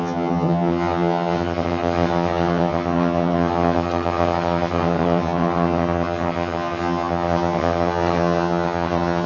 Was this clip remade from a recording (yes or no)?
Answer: yes